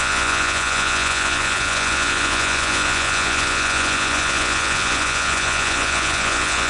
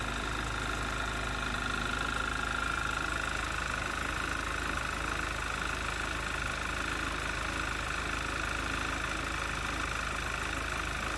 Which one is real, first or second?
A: second